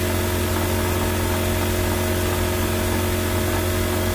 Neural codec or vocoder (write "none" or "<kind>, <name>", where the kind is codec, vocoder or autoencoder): none